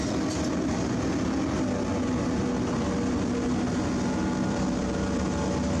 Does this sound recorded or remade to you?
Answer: recorded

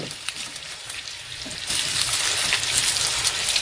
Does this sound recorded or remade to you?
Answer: remade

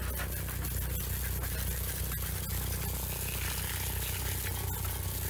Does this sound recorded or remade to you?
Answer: recorded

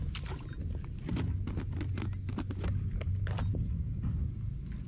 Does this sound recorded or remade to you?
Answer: recorded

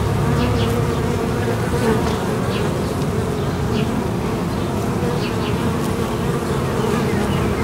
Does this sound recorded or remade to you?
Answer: recorded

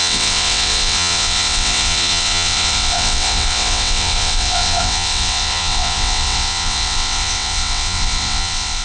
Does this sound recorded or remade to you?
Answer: remade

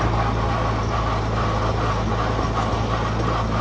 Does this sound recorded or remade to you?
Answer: recorded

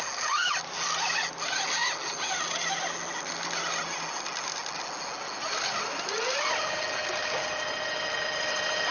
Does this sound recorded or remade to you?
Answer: recorded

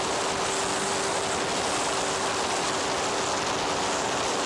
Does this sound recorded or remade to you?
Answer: recorded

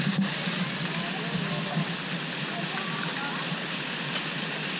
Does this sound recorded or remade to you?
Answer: recorded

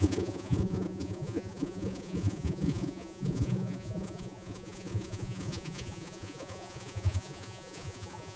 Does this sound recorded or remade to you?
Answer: remade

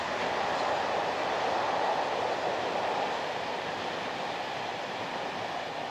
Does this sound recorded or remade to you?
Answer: recorded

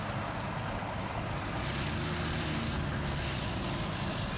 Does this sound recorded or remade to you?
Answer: recorded